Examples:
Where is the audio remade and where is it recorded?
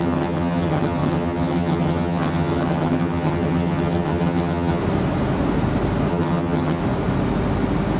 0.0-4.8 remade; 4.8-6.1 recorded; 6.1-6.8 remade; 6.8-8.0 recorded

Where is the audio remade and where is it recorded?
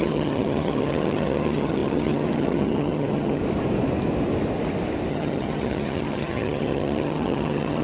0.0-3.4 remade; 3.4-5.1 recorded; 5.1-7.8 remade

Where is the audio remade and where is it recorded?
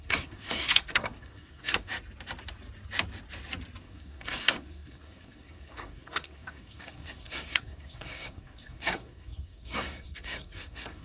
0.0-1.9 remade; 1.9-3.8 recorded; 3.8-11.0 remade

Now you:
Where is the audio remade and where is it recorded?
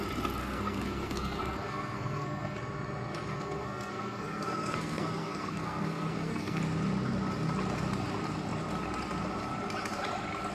0.0-0.4 recorded; 0.4-2.6 remade; 2.6-3.3 recorded; 3.3-6.6 remade; 6.6-10.5 recorded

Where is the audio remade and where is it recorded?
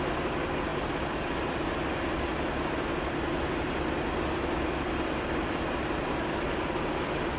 0.0-7.4 recorded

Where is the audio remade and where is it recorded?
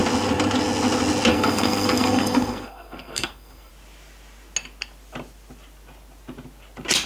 0.0-1.3 recorded; 1.3-3.7 remade; 3.7-7.1 recorded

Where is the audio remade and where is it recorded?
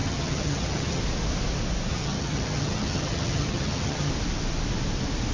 0.0-1.0 remade; 1.0-1.9 recorded; 1.9-4.1 remade; 4.1-5.3 recorded